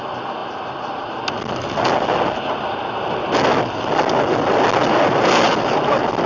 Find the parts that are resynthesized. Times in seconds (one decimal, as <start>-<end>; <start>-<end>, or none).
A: none